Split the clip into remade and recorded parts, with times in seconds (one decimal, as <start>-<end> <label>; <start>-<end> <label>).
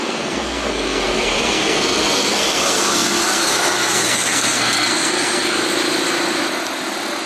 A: 0.0-5.6 remade; 5.6-7.3 recorded